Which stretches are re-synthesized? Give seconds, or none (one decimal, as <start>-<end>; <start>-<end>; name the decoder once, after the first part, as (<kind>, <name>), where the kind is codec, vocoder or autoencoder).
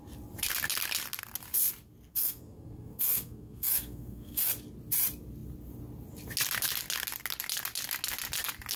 2.1-4.5 (codec, SNAC)